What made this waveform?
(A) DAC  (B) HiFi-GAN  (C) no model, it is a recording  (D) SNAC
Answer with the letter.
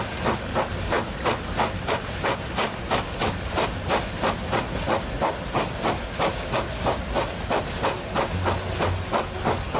C